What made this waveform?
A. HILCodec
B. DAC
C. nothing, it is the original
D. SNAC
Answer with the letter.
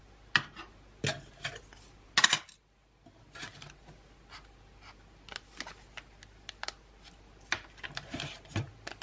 C